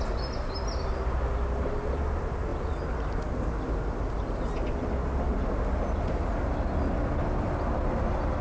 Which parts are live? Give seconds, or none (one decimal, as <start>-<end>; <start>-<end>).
0.0-8.4